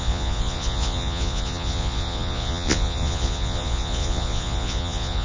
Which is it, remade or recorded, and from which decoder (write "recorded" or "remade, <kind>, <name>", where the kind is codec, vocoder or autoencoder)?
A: remade, vocoder, Vocos